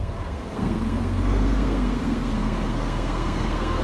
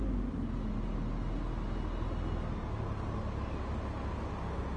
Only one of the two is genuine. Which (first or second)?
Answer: second